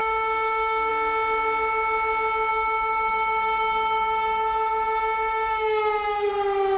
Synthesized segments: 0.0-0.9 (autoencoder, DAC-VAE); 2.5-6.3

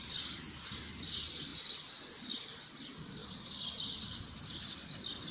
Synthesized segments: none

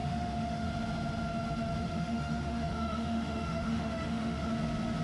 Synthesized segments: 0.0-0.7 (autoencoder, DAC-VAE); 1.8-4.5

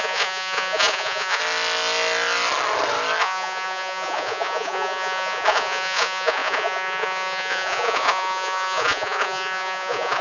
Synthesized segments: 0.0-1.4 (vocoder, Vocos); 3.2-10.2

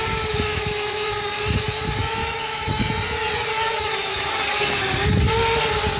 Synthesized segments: 0.5-1.1 (autoencoder, DAC-VAE); 2.2-2.8; 3.7-4.3

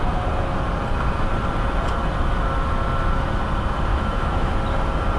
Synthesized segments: 3.9-4.5 (autoencoder, DAC-VAE)

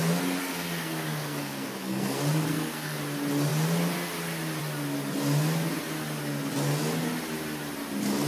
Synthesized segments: 0.4-3.0 (codec, SNAC)

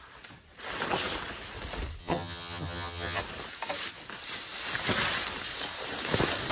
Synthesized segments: 2.0-3.2 (vocoder, HiFi-GAN)